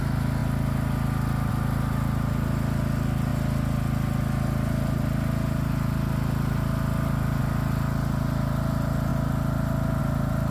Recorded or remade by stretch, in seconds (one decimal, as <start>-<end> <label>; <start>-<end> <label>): 0.0-10.5 recorded